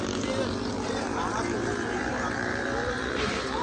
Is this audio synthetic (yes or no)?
yes